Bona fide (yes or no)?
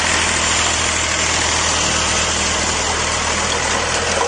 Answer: yes